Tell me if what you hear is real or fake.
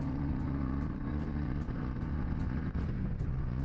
fake